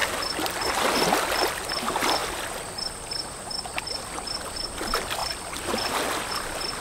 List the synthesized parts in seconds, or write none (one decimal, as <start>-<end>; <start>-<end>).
none